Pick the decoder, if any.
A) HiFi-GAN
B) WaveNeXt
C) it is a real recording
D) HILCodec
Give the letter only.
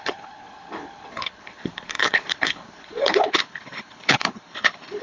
D